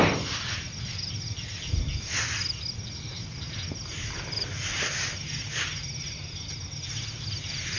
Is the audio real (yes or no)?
yes